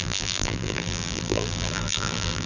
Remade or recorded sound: remade